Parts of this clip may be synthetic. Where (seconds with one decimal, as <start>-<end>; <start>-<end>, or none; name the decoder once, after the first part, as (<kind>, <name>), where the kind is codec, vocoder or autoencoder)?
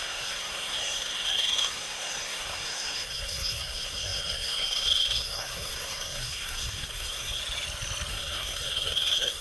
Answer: 0.0-7.4 (codec, SNAC); 8.1-9.4